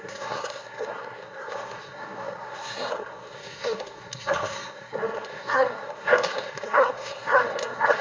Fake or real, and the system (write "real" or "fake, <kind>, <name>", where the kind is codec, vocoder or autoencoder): fake, codec, SNAC